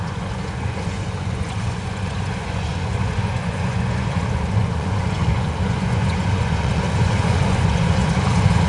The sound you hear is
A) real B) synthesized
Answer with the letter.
B